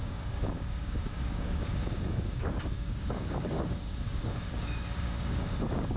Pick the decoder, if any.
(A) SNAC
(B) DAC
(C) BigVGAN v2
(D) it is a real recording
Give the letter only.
B